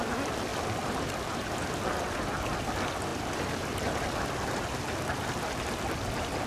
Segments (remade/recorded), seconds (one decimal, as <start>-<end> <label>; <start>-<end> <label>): 0.0-6.5 recorded

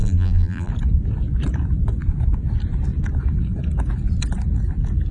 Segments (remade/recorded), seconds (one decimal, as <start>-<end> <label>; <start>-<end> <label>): 0.0-0.7 remade; 0.7-5.1 recorded

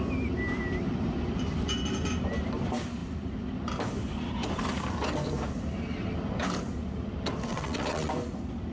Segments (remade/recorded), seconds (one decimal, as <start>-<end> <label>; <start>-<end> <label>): 0.0-7.5 recorded; 7.5-8.1 remade; 8.1-8.7 recorded

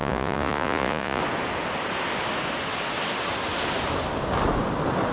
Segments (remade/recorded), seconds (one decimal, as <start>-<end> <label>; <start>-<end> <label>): 0.0-1.2 remade; 1.2-5.1 recorded

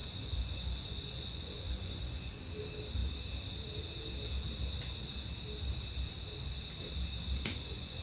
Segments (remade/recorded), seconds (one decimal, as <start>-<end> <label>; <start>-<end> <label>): 0.0-2.4 remade; 2.4-7.5 recorded; 7.5-8.0 remade